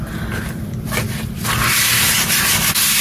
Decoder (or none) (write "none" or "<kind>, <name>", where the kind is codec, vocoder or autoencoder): vocoder, BigVGAN v2